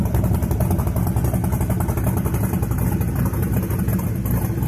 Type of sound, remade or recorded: recorded